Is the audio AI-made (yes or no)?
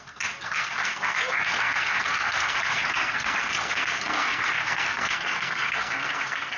yes